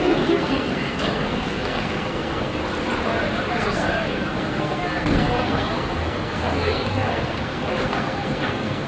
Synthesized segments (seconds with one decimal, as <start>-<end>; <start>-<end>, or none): 0.0-2.6; 3.5-8.9